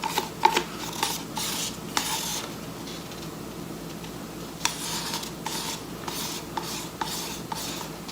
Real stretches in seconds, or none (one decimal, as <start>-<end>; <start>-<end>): 0.0-8.1